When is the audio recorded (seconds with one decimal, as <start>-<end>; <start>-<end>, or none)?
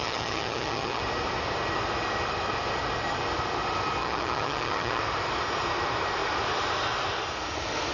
1.0-4.0; 5.0-7.9